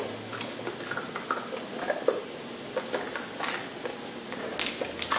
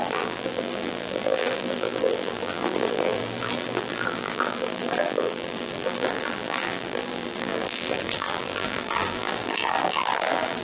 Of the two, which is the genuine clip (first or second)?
first